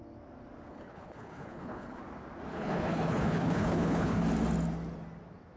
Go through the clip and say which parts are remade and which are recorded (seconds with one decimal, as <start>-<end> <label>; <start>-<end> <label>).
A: 0.0-0.7 recorded; 0.7-2.0 remade; 2.0-2.5 recorded; 2.5-4.2 remade; 4.2-5.6 recorded